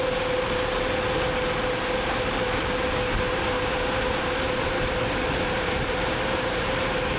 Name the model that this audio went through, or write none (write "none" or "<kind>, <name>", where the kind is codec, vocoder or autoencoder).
none